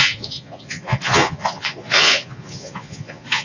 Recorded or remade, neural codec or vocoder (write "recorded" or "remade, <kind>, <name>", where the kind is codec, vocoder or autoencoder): remade, vocoder, Vocos